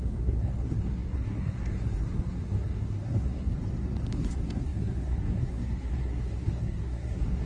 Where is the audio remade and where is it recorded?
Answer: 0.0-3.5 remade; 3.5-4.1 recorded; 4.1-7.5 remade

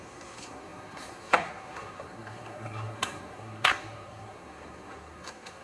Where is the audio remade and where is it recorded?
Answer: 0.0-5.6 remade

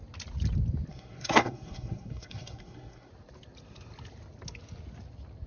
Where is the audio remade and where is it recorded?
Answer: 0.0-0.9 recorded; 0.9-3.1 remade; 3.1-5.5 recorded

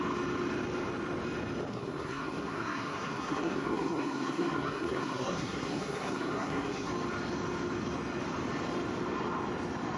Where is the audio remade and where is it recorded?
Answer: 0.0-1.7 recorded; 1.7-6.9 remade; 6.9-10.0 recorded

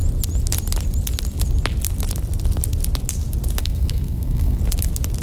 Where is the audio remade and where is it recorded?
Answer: 0.0-3.6 recorded; 3.6-4.6 remade; 4.6-5.2 recorded